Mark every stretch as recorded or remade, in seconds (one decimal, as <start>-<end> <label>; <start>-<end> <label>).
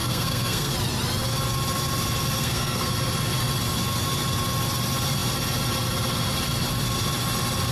0.0-0.7 remade; 0.7-2.4 recorded; 2.4-2.9 remade; 2.9-7.7 recorded